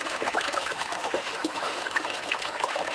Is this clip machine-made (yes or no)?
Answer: yes